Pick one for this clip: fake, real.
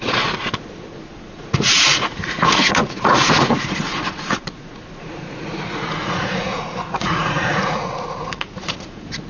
fake